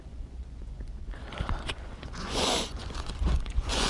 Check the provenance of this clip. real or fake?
fake